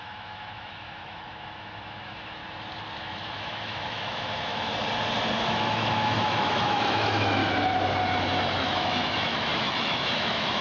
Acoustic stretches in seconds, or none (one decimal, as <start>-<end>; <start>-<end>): 2.4-3.0; 4.7-5.4; 7.4-8.6